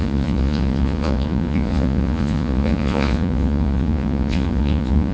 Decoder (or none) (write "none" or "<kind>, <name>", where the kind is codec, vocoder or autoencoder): vocoder, Vocos